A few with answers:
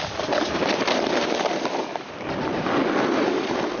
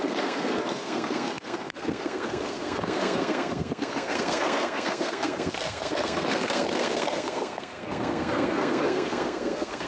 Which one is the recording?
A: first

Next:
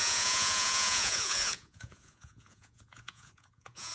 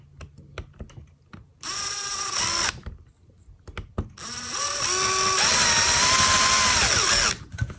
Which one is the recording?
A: second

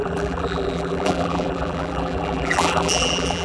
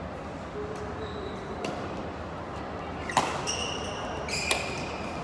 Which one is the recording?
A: second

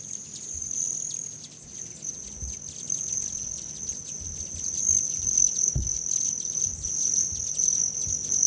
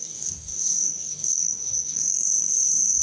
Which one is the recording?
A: first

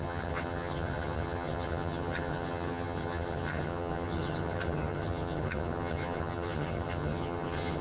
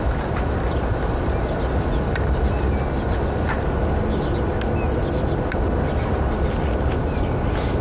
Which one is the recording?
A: second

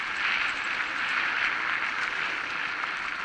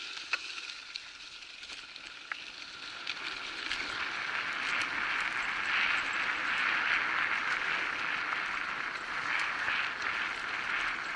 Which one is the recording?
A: second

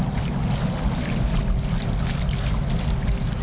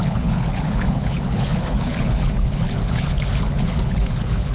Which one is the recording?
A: first